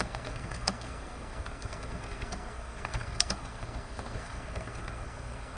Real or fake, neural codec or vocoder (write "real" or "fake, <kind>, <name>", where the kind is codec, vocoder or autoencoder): fake, codec, SNAC